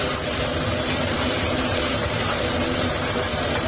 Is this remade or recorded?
remade